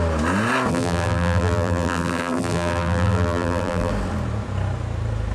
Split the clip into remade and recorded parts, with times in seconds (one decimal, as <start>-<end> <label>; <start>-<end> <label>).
0.0-0.7 recorded; 0.7-3.9 remade; 3.9-5.3 recorded